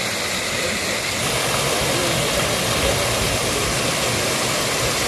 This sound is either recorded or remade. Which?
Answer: recorded